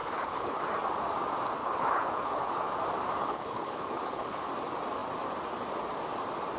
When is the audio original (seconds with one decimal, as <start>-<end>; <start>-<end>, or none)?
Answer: 0.6-1.6; 2.7-3.2; 4.5-6.6